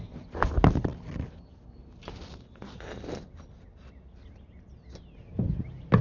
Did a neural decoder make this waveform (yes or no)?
no